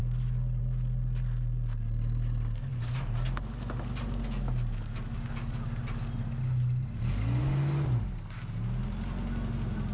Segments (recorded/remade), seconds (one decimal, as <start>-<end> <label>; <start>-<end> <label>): 0.0-9.9 recorded